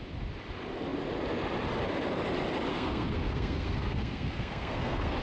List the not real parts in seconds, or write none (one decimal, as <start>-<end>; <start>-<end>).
2.7-5.2